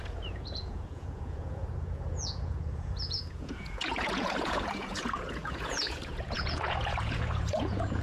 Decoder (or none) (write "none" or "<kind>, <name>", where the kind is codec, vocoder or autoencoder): vocoder, Vocos